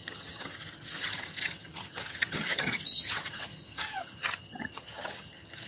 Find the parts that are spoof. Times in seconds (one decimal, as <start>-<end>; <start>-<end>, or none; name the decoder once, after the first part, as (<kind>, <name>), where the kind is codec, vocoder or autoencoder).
0.0-5.7 (vocoder, HiFi-GAN)